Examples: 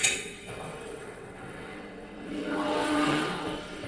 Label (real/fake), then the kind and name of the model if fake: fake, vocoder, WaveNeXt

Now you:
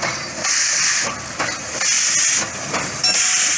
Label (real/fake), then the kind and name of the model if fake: real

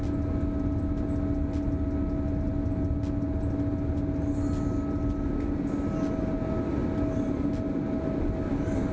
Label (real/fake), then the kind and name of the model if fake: real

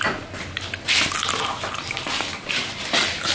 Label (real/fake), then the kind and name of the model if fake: real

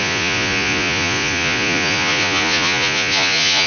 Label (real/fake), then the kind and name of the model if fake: fake, vocoder, Vocos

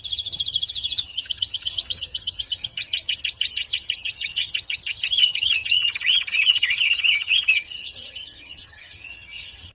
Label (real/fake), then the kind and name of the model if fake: fake, vocoder, HiFi-GAN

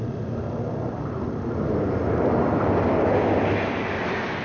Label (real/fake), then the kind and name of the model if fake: real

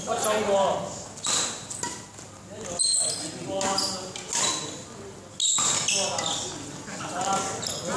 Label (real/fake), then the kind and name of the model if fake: real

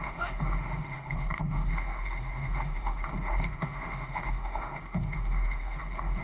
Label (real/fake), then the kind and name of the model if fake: fake, autoencoder, DAC-VAE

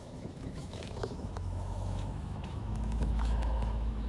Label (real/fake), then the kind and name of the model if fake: fake, autoencoder, DAC-VAE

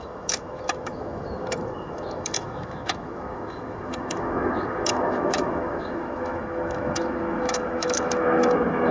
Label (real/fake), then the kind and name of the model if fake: fake, autoencoder, DAC-VAE